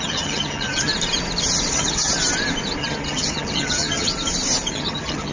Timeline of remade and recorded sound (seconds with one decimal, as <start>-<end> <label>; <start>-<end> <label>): 0.0-0.9 remade; 0.9-1.7 recorded; 1.7-2.1 remade; 2.1-2.8 recorded; 2.8-4.1 remade; 4.1-4.7 recorded; 4.7-5.3 remade